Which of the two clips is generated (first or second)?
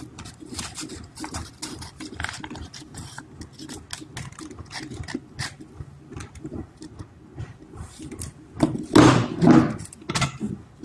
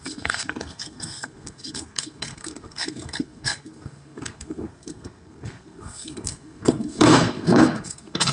second